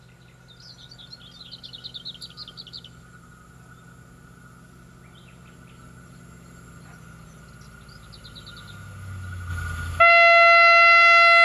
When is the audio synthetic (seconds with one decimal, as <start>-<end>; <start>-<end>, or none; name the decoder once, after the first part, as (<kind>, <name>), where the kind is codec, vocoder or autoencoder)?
none